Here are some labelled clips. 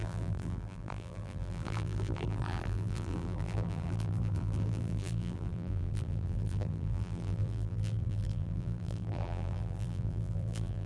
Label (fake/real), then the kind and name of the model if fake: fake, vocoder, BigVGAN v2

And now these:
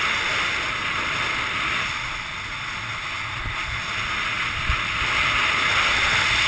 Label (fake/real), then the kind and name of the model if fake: real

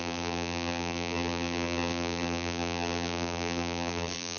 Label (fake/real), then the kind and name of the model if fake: fake, vocoder, BigVGAN v2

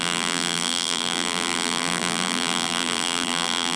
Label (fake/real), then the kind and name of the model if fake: fake, vocoder, BigVGAN v2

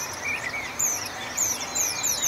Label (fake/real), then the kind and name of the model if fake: fake, vocoder, BigVGAN v2